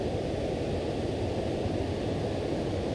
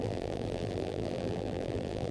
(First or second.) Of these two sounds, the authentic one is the first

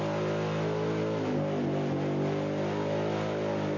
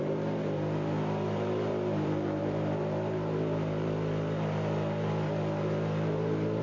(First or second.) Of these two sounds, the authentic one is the first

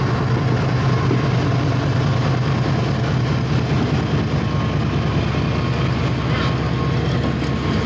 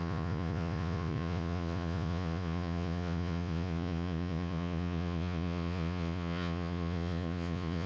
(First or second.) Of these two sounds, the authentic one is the first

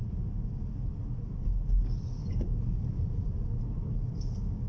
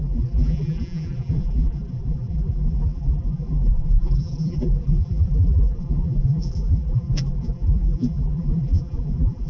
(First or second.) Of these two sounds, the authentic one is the first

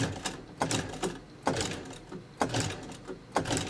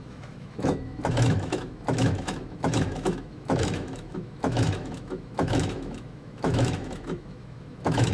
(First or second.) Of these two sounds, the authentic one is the first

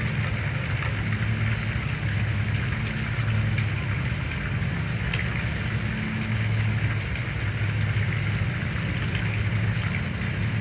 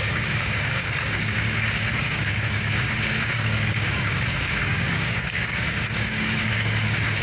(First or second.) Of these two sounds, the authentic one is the first